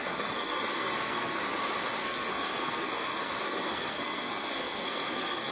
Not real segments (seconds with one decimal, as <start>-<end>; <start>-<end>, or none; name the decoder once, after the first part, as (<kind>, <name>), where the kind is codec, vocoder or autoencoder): 0.0-1.4 (codec, SNAC); 2.0-5.5